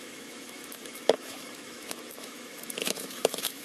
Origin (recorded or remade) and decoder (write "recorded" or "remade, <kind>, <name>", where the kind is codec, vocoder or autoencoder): remade, autoencoder, DAC-VAE